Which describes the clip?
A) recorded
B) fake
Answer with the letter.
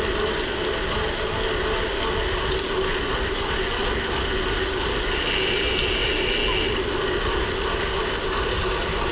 A